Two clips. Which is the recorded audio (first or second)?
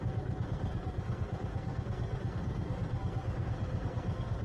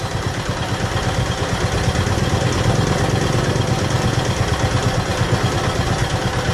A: second